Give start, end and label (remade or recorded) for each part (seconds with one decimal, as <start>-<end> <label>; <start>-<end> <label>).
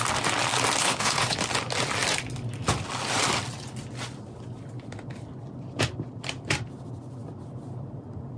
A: 0.0-0.8 recorded; 0.8-1.4 remade; 1.4-8.4 recorded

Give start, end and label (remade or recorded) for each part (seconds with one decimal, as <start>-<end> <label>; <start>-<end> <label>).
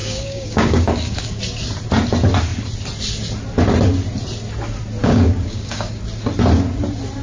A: 0.0-1.4 remade; 1.4-5.0 recorded; 5.0-6.0 remade; 6.0-7.2 recorded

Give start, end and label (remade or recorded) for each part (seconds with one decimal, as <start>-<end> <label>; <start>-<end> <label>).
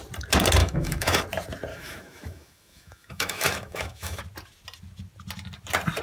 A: 0.0-0.6 recorded; 0.6-1.2 remade; 1.2-1.7 recorded; 1.7-4.2 remade; 4.2-6.0 recorded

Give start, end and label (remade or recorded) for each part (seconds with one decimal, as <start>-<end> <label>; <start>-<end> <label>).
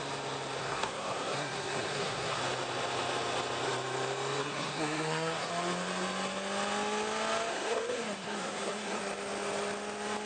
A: 0.0-0.6 recorded; 0.6-2.4 remade; 2.4-4.4 recorded; 4.4-5.5 remade; 5.5-7.5 recorded; 7.5-9.0 remade; 9.0-10.3 recorded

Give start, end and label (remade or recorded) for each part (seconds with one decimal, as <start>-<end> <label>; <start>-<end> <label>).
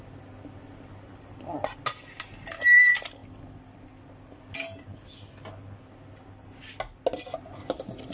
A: 0.0-8.1 recorded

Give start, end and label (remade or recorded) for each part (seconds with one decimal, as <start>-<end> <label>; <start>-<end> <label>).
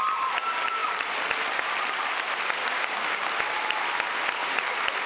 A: 0.0-2.6 recorded; 2.6-3.3 remade; 3.3-5.1 recorded